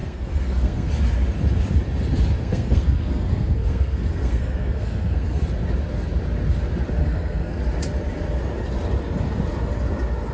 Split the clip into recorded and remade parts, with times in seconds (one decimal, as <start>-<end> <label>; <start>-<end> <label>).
0.0-0.9 remade; 0.9-2.4 recorded; 2.4-5.4 remade; 5.4-7.0 recorded; 7.0-7.6 remade; 7.6-10.3 recorded